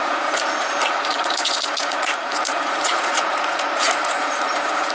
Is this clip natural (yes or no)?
no